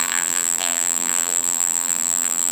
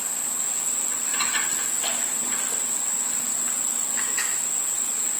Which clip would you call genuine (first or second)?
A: second